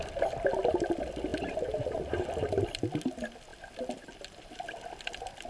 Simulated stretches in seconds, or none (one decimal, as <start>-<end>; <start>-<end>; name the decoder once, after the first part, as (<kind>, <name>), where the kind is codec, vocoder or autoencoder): 1.3-2.5 (vocoder, BigVGAN v2); 3.5-4.2